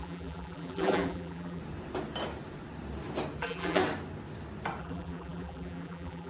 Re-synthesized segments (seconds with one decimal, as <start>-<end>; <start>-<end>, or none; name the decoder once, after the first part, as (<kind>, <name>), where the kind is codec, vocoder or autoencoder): 0.0-1.6 (vocoder, BigVGAN v2); 3.4-3.8; 4.8-6.3